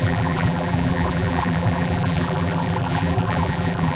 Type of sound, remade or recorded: remade